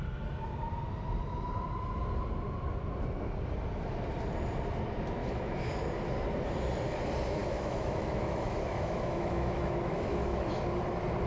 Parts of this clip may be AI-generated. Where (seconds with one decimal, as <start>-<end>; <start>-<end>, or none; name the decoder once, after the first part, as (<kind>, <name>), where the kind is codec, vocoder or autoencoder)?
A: 5.2-5.7 (autoencoder, DAC-VAE); 7.4-10.5